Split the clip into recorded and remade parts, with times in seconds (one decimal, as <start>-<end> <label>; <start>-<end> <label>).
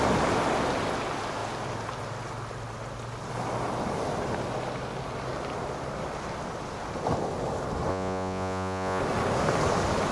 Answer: 0.0-7.9 recorded; 7.9-9.0 remade; 9.0-10.1 recorded